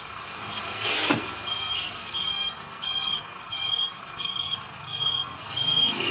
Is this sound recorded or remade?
remade